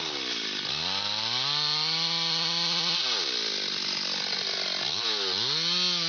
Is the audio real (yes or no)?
yes